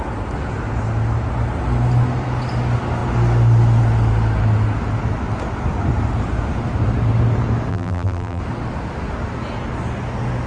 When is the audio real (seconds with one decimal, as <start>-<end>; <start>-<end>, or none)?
0.0-7.7; 8.4-10.5